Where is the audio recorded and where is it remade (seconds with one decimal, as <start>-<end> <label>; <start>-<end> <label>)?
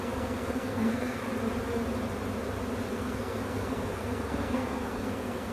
0.0-1.3 remade; 1.3-2.9 recorded; 2.9-5.5 remade